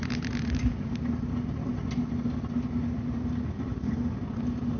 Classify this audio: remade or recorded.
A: recorded